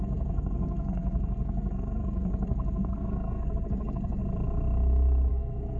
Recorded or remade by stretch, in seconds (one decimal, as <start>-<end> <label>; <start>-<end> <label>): 0.0-4.2 remade; 4.2-5.3 recorded; 5.3-5.8 remade

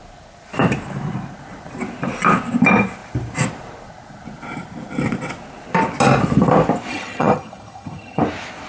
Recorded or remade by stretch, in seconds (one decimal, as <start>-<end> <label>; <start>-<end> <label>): 0.0-6.9 recorded; 6.9-8.2 remade; 8.2-8.7 recorded

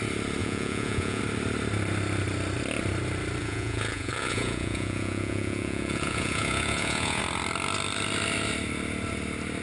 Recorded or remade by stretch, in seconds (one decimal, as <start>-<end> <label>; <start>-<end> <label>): 0.0-0.4 recorded; 0.4-1.2 remade; 1.2-3.4 recorded; 3.4-7.2 remade; 7.2-9.6 recorded

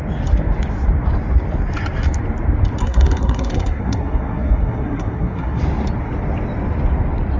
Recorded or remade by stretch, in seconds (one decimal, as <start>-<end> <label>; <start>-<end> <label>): 0.0-2.8 recorded; 2.8-5.6 remade; 5.6-7.4 recorded

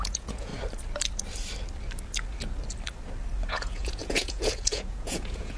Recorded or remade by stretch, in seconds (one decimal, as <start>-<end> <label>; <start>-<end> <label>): 0.0-0.5 remade; 0.5-3.5 recorded; 3.5-5.6 remade

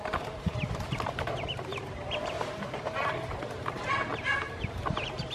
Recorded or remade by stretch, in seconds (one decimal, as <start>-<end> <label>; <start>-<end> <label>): 0.0-5.3 remade

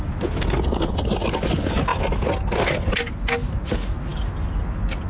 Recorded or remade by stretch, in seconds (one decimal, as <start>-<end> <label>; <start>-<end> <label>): 0.0-5.1 recorded

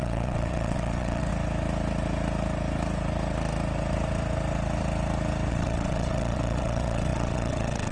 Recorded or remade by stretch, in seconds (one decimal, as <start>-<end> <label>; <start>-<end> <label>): 0.0-1.3 remade; 1.3-5.5 recorded; 5.5-7.9 remade